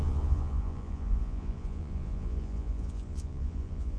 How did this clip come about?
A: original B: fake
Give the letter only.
B